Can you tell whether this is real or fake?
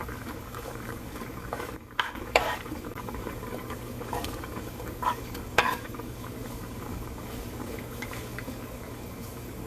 fake